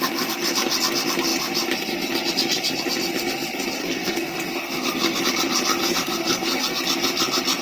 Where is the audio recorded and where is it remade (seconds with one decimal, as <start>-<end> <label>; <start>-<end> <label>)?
0.0-3.8 recorded; 3.8-5.2 remade; 5.2-5.8 recorded; 5.8-6.8 remade; 6.8-7.6 recorded